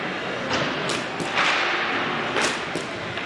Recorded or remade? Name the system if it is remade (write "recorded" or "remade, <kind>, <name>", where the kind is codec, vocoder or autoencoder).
recorded